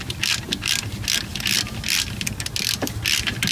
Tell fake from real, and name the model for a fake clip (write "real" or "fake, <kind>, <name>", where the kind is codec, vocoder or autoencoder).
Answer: real